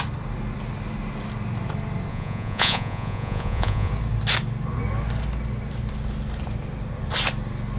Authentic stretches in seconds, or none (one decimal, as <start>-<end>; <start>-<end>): 0.0-2.1; 3.9-7.8